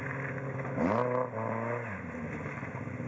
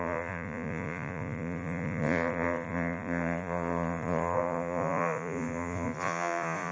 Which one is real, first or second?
first